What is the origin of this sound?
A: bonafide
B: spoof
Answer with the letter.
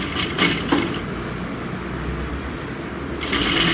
A